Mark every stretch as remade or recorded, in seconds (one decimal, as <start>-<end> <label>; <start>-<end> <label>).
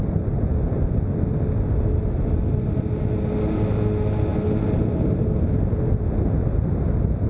0.0-7.3 recorded